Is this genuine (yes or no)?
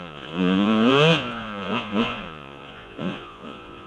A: no